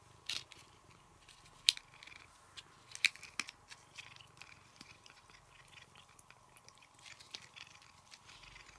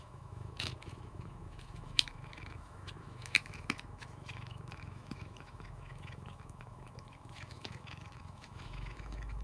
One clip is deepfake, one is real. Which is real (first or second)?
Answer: first